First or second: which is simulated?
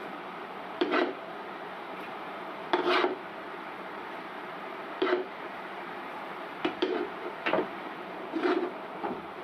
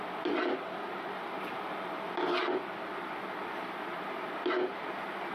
first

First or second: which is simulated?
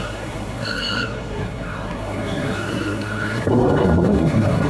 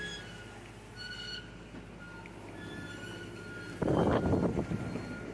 first